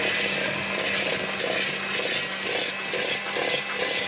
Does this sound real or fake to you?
real